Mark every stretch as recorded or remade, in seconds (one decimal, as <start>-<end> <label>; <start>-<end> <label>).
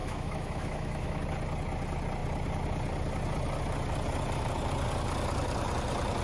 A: 0.0-1.2 remade; 1.2-6.2 recorded